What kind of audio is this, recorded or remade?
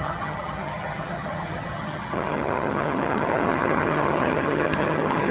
remade